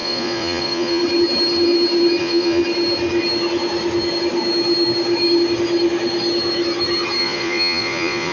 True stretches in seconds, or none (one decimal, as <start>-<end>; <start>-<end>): 1.0-2.2; 2.6-7.2